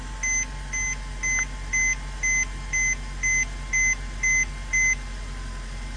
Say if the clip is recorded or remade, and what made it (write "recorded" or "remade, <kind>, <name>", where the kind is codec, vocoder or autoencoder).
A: recorded